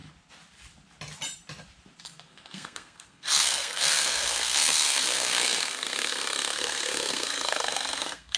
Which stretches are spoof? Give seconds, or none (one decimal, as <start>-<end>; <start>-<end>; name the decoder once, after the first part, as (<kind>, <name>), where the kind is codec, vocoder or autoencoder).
2.0-8.4 (codec, SNAC)